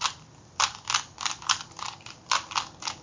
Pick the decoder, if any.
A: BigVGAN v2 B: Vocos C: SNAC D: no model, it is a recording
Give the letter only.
D